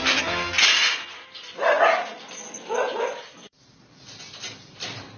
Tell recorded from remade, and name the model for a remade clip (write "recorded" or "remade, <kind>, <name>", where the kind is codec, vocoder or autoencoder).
recorded